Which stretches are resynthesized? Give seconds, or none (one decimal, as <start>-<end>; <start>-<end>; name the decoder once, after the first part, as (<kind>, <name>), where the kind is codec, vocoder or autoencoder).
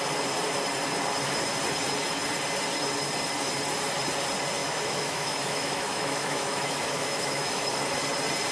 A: 4.6-7.7 (autoencoder, DAC-VAE)